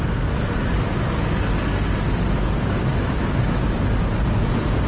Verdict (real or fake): real